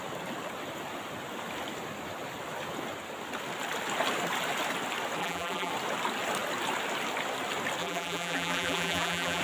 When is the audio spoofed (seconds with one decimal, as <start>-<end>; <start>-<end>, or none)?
5.2-5.7; 7.8-9.4